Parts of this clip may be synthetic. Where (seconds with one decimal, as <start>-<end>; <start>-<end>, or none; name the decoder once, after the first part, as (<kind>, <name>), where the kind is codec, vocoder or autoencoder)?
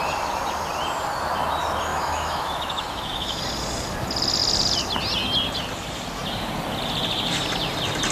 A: 1.9-3.4 (autoencoder, DAC-VAE)